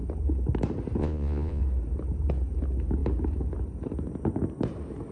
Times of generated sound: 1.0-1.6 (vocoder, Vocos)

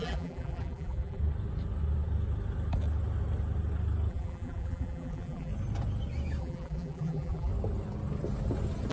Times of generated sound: 0.0-1.2 (vocoder, BigVGAN v2); 4.1-5.5; 6.4-7.5

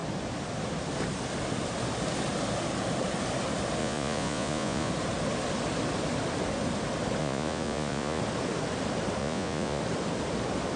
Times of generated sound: 3.8-4.9 (vocoder, Vocos); 7.2-8.2; 9.2-9.8

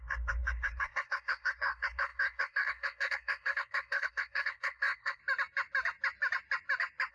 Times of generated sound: 0.0-5.2 (codec, SNAC)

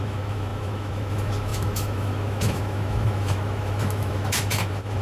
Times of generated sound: 0.0-5.0 (autoencoder, DAC-VAE)

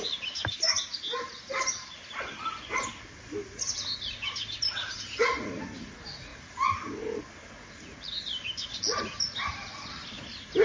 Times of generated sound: none

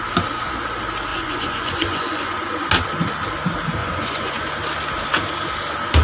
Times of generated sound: 1.1-2.7 (vocoder, Vocos); 3.8-4.5

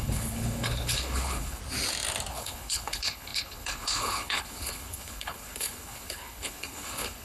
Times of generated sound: 0.0-1.6 (codec, HILCodec); 2.3-7.2